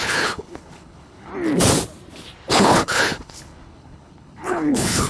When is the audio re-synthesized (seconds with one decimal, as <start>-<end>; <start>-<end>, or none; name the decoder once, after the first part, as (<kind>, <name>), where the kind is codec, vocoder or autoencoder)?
0.0-1.3 (codec, HILCodec); 2.5-5.1